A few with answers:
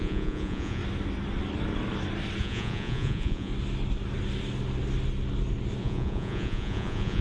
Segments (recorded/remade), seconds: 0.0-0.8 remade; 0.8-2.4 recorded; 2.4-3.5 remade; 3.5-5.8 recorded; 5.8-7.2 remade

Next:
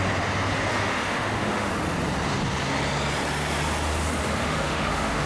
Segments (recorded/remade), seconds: 0.0-0.7 recorded; 0.7-1.7 remade; 1.7-4.4 recorded; 4.4-5.3 remade